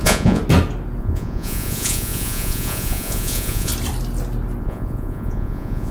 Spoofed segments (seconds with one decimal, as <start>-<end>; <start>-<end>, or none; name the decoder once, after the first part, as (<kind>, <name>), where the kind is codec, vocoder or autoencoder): 0.0-0.4 (vocoder, Vocos); 1.0-3.7; 4.6-5.9